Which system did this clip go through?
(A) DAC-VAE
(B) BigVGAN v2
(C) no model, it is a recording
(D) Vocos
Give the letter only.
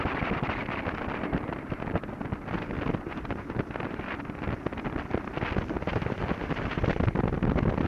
C